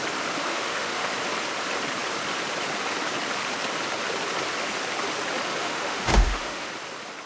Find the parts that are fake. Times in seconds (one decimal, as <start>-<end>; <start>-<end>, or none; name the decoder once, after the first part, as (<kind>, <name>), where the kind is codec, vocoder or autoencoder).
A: 0.4-1.1 (autoencoder, DAC-VAE); 5.6-6.7